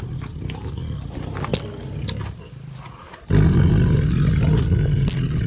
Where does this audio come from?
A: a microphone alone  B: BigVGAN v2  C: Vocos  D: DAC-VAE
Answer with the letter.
A